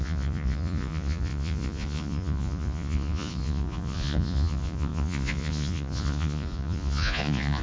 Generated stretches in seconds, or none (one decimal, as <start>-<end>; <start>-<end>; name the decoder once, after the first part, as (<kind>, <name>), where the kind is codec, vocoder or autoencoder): 0.0-7.6 (vocoder, Vocos)